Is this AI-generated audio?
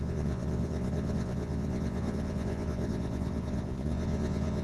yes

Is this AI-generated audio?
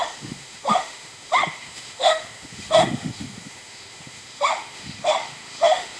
yes